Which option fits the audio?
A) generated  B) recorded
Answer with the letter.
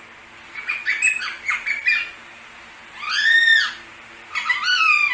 B